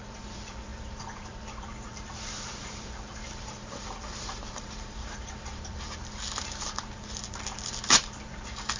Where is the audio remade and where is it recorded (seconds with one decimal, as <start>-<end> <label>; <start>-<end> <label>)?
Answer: 0.0-8.8 remade